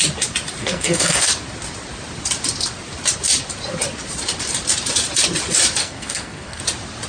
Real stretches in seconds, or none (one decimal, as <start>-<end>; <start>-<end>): 0.0-0.6; 1.3-5.8; 6.6-7.1